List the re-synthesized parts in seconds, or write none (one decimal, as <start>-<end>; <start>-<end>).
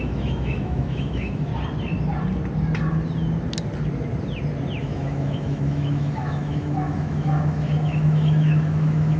0.0-1.5; 4.8-9.2